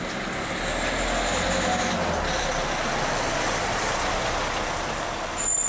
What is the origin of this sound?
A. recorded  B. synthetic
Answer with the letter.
A